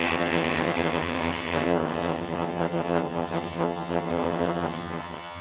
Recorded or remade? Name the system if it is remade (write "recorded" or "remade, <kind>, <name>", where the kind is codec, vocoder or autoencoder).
remade, vocoder, HiFi-GAN